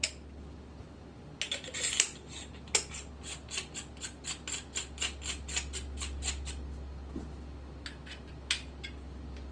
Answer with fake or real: real